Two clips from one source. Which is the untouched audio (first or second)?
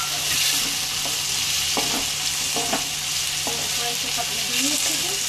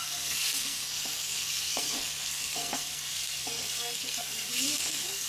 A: first